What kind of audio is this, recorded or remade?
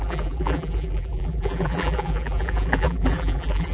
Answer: remade